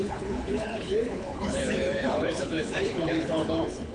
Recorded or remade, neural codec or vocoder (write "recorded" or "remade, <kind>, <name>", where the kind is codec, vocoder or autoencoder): remade, codec, HILCodec